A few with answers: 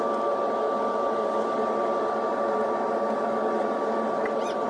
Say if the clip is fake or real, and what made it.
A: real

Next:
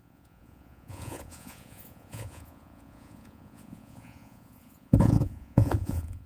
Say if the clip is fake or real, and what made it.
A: fake, vocoder, Vocos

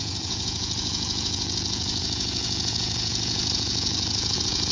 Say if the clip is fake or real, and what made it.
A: fake, vocoder, Vocos